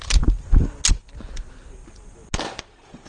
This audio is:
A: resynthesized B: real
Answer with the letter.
B